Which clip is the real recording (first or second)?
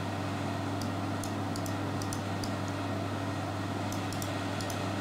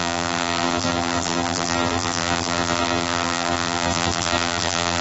first